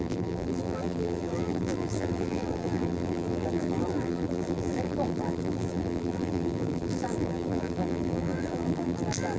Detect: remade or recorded remade